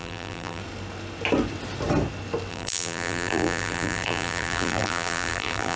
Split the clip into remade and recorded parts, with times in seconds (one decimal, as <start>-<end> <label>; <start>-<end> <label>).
0.0-0.6 remade; 0.6-2.5 recorded; 2.5-5.8 remade